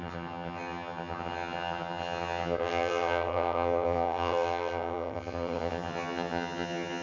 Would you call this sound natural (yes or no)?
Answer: no